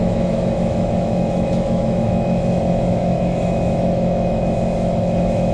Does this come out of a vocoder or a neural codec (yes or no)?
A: yes